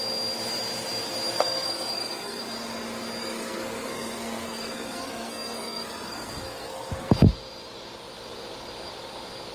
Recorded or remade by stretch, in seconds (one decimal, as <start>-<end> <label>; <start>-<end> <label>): 0.0-1.3 recorded; 1.3-2.4 remade; 2.4-3.2 recorded; 3.2-7.1 remade; 7.1-9.5 recorded